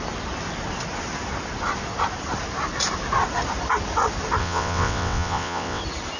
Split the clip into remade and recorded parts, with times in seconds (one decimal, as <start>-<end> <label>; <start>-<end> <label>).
0.0-4.4 recorded; 4.4-5.8 remade; 5.8-6.2 recorded